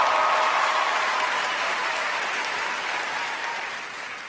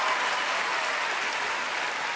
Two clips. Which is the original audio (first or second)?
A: first